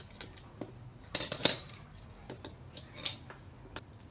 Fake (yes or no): no